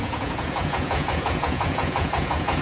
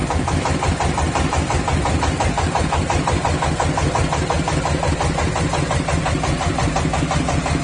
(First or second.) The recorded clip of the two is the second